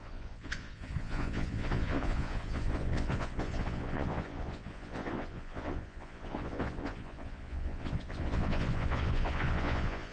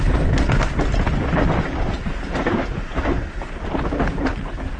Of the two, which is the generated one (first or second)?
first